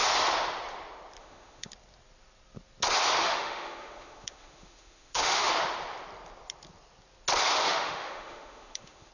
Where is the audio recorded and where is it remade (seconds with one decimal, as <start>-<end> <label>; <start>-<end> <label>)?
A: 0.0-1.2 recorded; 1.2-1.7 remade; 1.7-3.2 recorded; 3.2-5.5 remade; 5.5-7.6 recorded; 7.6-9.1 remade